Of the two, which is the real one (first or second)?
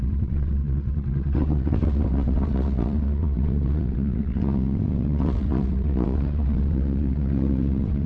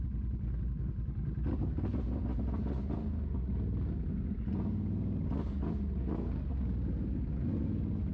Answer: second